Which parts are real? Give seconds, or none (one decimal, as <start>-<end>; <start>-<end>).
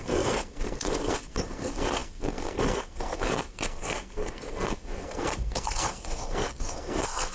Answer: none